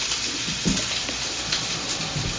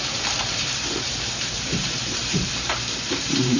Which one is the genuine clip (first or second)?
first